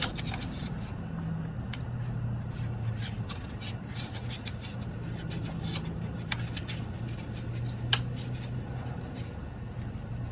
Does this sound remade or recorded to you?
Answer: recorded